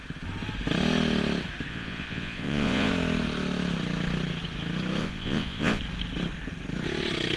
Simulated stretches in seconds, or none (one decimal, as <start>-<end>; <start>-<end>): 1.7-2.9; 5.0-5.8